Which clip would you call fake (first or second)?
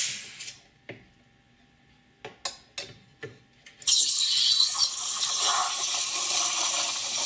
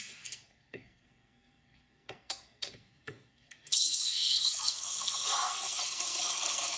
second